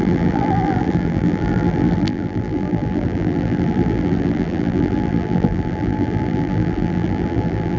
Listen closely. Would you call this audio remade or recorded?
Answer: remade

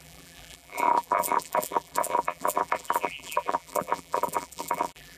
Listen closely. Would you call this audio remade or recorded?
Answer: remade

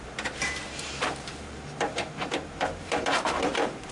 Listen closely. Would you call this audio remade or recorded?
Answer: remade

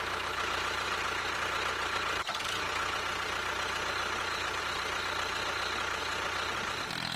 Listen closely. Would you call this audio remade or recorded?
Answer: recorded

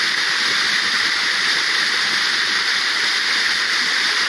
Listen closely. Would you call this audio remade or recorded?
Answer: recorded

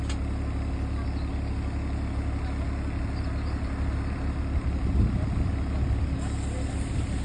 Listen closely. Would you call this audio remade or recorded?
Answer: recorded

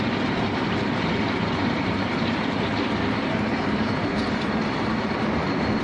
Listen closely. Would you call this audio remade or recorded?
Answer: remade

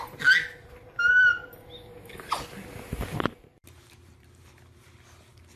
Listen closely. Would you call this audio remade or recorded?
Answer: recorded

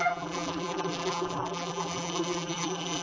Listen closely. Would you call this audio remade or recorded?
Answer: remade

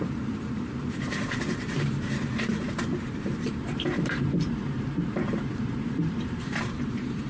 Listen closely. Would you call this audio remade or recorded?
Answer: remade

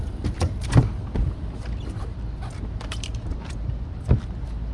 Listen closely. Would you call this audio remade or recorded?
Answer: remade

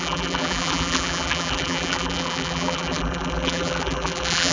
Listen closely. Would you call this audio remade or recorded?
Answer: remade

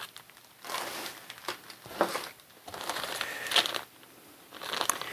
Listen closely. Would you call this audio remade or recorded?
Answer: recorded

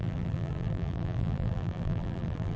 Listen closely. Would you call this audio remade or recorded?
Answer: remade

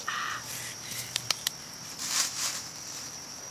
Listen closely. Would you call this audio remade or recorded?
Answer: remade